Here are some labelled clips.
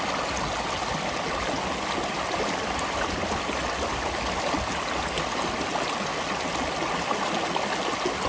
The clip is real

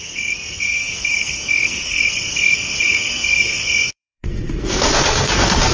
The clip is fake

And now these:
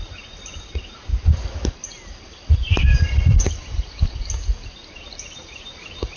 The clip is real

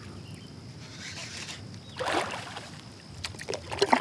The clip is real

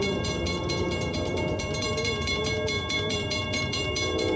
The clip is fake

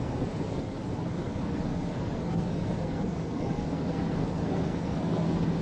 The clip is fake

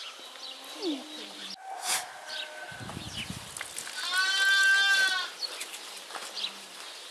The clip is real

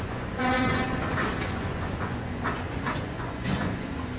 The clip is fake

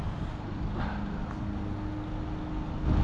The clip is real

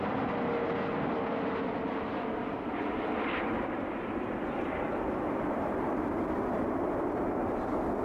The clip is real